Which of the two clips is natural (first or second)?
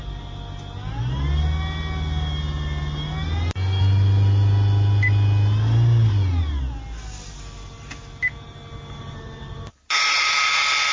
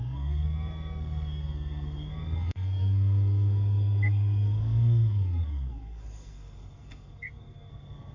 first